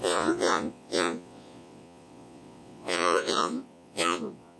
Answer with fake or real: fake